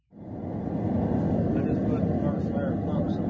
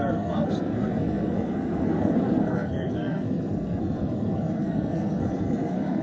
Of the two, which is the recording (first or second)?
first